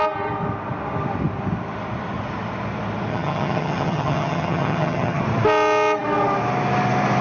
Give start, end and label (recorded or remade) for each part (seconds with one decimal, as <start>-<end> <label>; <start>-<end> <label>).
0.0-3.1 recorded; 3.1-5.2 remade; 5.2-7.2 recorded